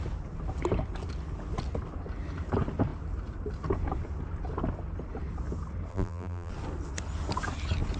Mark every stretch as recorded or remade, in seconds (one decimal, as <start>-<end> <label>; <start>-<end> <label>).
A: 0.0-5.9 recorded; 5.9-6.5 remade; 6.5-8.0 recorded